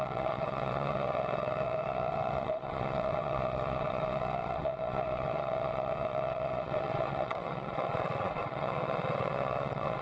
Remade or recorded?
remade